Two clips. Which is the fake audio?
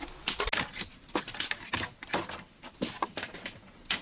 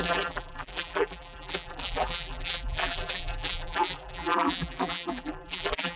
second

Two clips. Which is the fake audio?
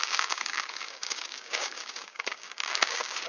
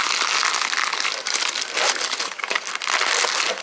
first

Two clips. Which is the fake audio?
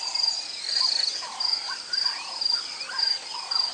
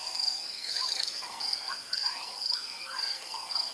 second